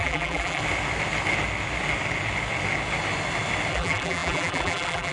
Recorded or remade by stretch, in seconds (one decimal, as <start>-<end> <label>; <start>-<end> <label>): 0.0-0.6 remade; 0.6-3.7 recorded; 3.7-5.1 remade